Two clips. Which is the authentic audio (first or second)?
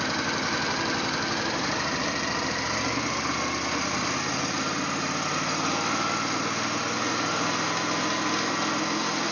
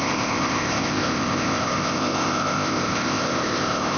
first